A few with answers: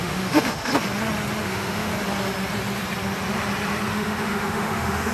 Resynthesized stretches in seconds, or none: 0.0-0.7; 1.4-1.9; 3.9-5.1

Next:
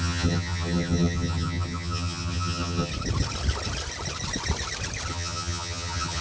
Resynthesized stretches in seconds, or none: 0.0-2.9; 5.1-6.2

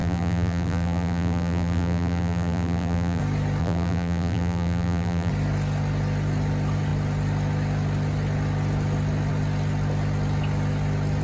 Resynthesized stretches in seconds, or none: 0.0-3.2; 3.6-5.3

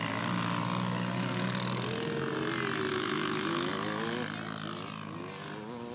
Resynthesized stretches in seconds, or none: 2.9-3.7

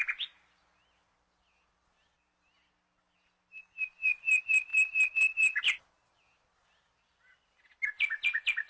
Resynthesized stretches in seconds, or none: none

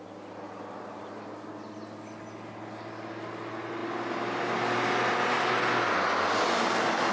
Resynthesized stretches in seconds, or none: none

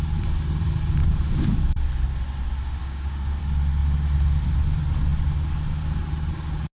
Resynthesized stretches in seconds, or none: 1.0-1.9; 2.8-3.4